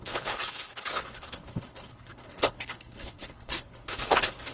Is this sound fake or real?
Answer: fake